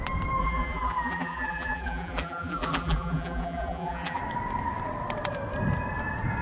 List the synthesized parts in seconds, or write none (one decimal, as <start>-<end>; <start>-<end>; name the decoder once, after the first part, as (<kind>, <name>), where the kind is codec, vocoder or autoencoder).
0.4-4.2 (vocoder, BigVGAN v2)